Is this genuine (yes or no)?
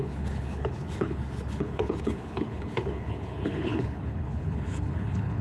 no